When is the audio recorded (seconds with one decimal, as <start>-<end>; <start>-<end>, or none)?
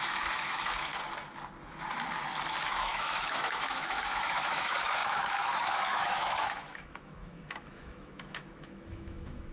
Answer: 0.9-2.6